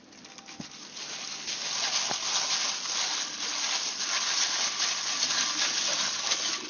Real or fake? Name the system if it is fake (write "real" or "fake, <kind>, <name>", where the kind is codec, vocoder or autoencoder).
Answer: real